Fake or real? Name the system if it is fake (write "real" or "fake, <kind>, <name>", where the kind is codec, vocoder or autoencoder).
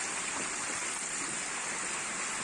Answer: real